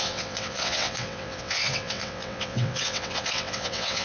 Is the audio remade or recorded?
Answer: remade